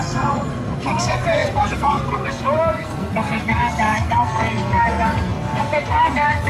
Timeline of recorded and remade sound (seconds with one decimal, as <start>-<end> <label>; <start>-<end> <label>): 0.0-6.5 remade